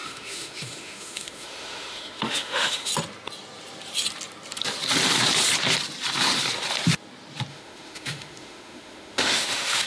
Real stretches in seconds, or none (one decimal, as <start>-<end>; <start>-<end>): 2.9-7.5